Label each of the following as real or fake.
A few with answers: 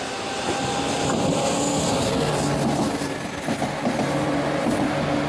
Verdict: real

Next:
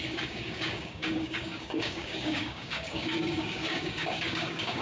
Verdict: fake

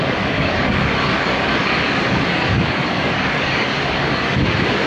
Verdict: fake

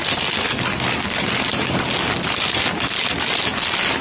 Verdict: real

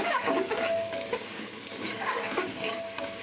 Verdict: fake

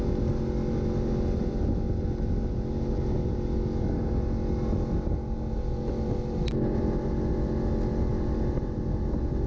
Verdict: real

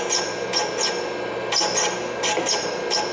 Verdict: real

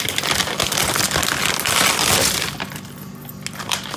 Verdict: real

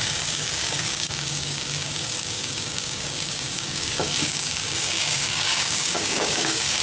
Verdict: fake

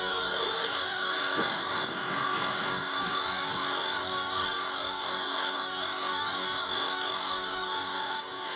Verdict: fake